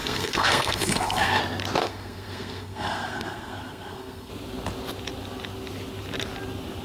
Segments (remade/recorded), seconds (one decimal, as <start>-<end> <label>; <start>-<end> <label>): 0.0-1.4 remade; 1.4-1.8 recorded; 1.8-4.3 remade; 4.3-6.8 recorded